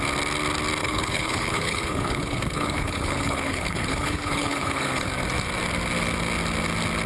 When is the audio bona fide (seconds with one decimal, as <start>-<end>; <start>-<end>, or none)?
0.0-0.8; 5.1-7.1